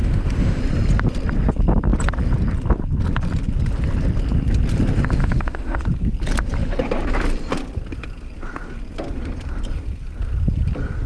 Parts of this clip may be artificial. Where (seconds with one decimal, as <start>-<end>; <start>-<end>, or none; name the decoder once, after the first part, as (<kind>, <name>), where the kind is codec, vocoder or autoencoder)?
0.0-0.6 (autoencoder, DAC-VAE); 5.2-5.8